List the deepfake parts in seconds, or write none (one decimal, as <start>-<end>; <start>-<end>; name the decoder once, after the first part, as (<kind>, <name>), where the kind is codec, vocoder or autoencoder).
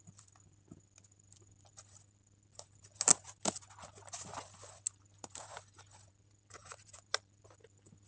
none